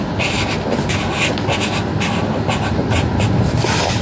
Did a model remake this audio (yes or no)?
no